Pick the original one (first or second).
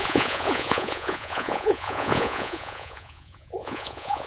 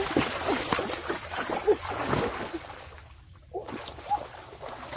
second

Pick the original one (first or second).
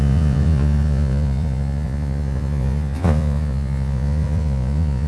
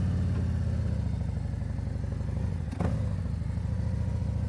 second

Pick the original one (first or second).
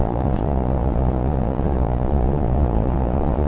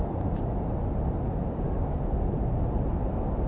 second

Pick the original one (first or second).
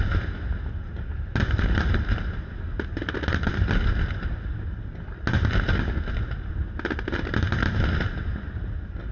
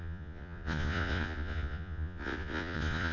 first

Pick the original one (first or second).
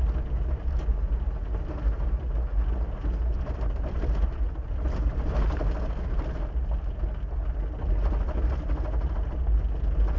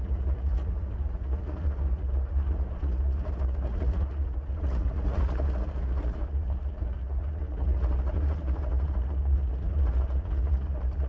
first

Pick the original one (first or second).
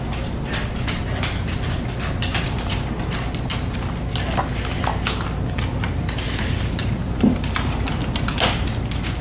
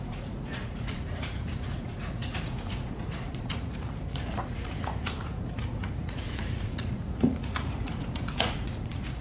first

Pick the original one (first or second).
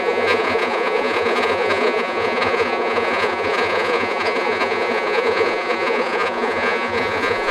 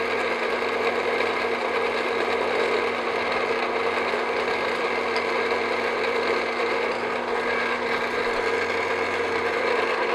second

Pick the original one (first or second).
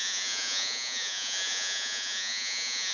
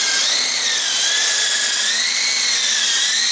second